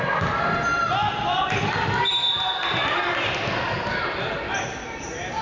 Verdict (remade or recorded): recorded